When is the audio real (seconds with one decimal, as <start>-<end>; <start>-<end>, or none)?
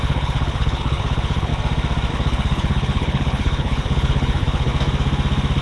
1.5-2.1; 4.7-5.6